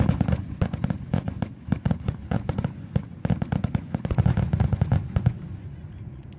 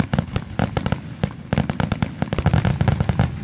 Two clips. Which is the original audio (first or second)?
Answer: second